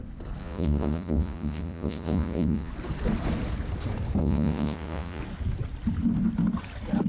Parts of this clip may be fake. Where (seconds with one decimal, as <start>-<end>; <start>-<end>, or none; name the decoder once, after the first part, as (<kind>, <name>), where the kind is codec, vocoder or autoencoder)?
0.4-2.7 (vocoder, Vocos); 4.2-5.2